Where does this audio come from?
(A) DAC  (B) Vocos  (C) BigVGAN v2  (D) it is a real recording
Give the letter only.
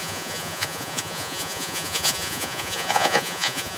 B